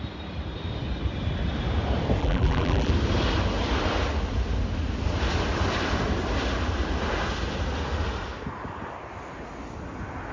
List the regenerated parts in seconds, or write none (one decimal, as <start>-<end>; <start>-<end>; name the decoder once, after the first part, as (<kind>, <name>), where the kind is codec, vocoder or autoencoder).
2.2-2.9 (vocoder, BigVGAN v2)